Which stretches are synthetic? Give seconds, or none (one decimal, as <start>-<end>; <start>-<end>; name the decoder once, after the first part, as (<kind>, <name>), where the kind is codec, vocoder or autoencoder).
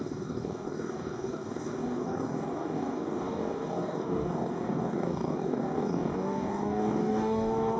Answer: 0.0-7.8 (codec, DAC)